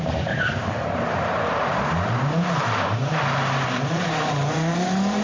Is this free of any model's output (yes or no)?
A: no